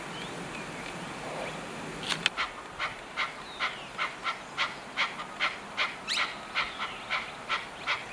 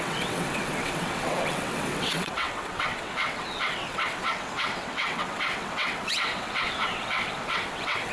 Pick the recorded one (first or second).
first